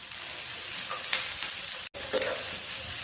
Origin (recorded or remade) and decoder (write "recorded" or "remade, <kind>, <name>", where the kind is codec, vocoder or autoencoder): recorded